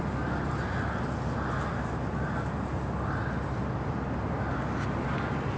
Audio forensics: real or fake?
real